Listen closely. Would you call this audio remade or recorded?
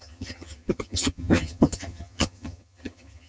remade